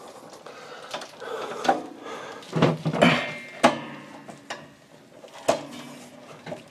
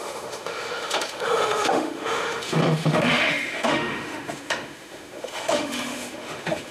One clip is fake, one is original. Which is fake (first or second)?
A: second